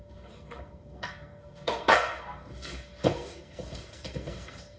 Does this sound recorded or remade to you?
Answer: remade